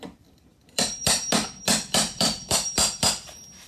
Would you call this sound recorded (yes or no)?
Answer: no